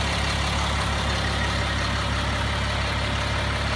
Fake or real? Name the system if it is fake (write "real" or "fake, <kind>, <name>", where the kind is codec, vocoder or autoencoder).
real